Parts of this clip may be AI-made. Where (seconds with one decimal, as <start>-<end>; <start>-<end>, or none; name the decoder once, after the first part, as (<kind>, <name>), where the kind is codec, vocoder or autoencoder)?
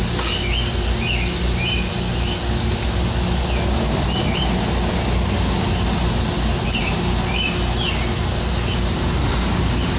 none